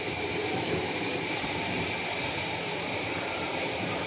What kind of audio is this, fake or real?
fake